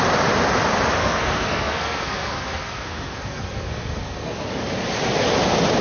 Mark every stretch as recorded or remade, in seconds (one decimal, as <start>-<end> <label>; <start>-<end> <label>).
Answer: 0.0-1.0 recorded; 1.0-4.5 remade; 4.5-5.8 recorded